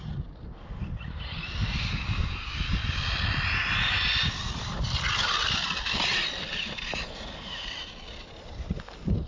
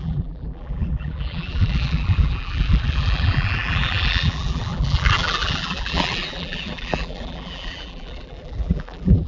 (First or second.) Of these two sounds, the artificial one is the second